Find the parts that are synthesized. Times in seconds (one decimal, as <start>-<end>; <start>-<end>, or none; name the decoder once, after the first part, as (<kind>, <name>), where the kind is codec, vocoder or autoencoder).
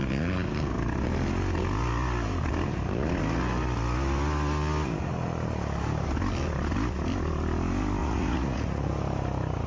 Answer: 8.0-8.9 (vocoder, Vocos)